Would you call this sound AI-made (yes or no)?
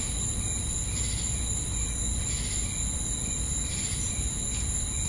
no